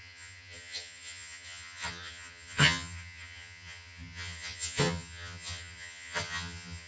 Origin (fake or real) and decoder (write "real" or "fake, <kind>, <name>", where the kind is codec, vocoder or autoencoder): fake, vocoder, HiFi-GAN